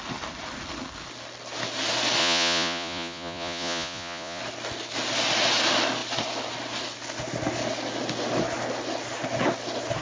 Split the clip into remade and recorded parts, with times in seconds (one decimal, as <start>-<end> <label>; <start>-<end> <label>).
0.0-2.2 recorded; 2.2-4.4 remade; 4.4-10.0 recorded